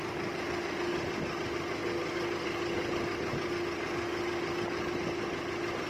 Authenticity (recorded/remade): recorded